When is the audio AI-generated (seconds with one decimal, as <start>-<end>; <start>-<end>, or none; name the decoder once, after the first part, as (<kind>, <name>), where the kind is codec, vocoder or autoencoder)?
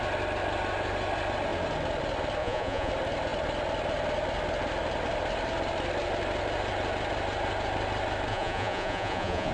2.4-2.9 (vocoder, Vocos); 8.3-9.5